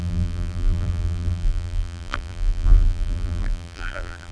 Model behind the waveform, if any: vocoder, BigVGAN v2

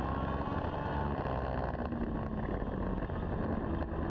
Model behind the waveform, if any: none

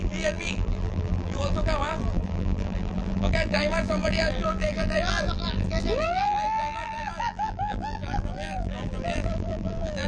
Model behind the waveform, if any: vocoder, BigVGAN v2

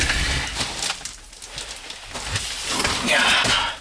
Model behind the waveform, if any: none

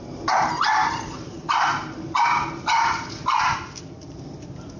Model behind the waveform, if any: vocoder, BigVGAN v2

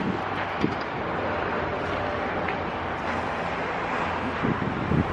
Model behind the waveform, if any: none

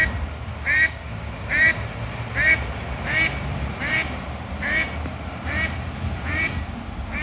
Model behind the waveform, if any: none